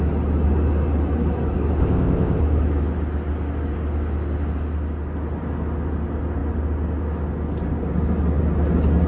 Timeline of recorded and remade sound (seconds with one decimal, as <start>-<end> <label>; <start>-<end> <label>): 0.0-1.8 recorded; 1.8-2.4 remade; 2.4-9.1 recorded

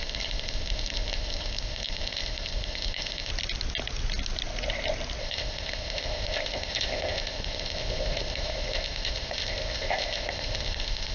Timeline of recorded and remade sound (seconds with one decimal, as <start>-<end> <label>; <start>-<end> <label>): 0.0-3.3 remade; 3.3-5.2 recorded; 5.2-11.1 remade

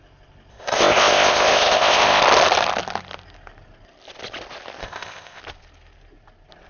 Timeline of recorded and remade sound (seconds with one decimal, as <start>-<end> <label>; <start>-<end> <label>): 0.0-0.5 recorded; 0.5-2.2 remade; 2.2-4.8 recorded; 4.8-5.4 remade; 5.4-6.7 recorded

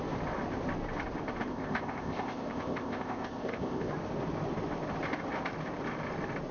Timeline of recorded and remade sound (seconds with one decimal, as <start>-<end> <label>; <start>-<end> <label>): 0.0-1.5 recorded; 1.5-3.9 remade; 3.9-6.5 recorded